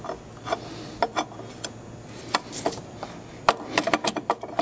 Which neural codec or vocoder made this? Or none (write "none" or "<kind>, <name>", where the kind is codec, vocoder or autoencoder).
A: none